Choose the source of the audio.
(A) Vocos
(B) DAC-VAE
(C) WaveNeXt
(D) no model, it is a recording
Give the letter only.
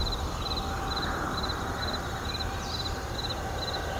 D